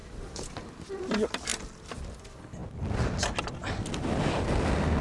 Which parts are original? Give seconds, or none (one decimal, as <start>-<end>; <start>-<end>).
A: 2.6-3.8